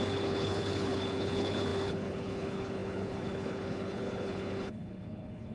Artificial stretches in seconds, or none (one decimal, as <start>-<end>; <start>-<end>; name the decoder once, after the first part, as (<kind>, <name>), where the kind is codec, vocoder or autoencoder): 0.0-5.5 (codec, HILCodec)